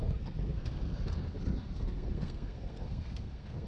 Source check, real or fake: fake